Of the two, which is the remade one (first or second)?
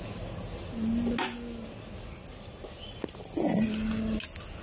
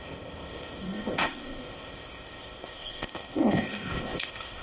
second